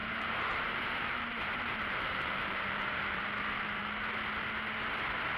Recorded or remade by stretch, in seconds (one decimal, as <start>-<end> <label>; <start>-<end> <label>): 0.0-3.2 remade; 3.2-5.4 recorded